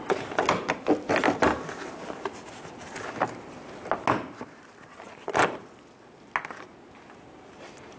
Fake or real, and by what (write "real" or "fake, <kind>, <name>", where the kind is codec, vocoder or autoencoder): real